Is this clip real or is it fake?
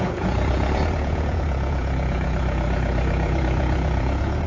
fake